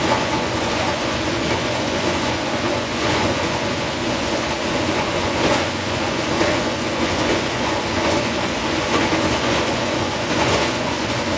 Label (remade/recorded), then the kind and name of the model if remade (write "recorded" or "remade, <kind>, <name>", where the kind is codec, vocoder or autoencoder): remade, vocoder, Vocos